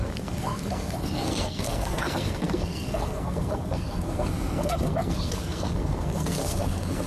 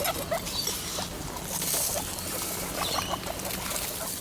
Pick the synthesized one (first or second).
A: first